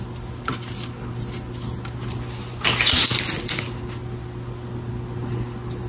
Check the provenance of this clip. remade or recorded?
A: recorded